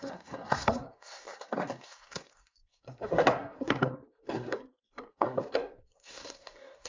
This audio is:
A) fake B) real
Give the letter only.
A